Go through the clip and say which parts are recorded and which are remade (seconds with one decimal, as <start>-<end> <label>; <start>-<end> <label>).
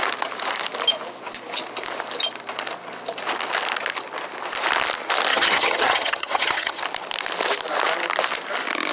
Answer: 0.0-5.3 recorded; 5.3-6.8 remade; 6.8-8.9 recorded